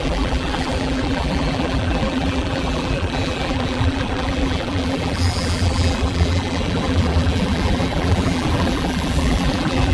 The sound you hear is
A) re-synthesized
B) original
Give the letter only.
A